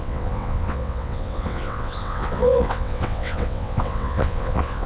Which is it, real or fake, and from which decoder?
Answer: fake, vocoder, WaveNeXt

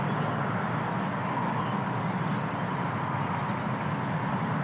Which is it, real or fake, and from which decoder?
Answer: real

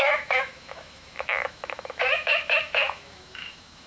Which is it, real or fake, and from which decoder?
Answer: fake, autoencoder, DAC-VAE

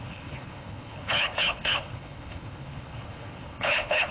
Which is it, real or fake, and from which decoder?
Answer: fake, codec, HILCodec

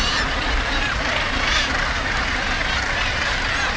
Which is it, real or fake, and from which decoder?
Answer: real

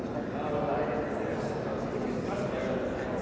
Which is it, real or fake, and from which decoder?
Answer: real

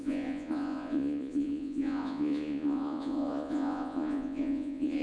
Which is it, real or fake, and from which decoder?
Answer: fake, vocoder, Vocos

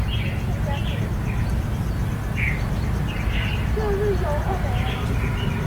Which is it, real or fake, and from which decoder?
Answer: real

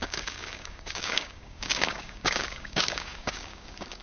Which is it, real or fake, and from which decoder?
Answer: fake, codec, DAC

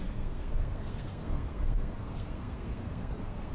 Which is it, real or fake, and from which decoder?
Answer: fake, codec, SNAC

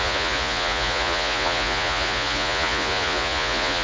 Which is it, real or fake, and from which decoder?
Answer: fake, vocoder, Vocos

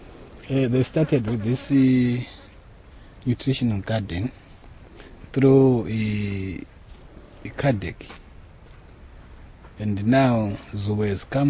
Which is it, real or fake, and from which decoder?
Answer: real